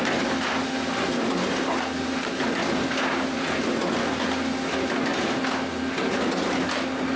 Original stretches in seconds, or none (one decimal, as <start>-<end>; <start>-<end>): 0.0-7.2